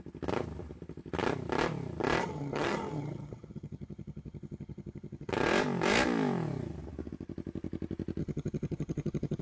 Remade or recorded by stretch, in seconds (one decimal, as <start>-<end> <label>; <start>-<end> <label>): 0.0-2.2 recorded; 2.2-5.3 remade; 5.3-8.2 recorded; 8.2-9.4 remade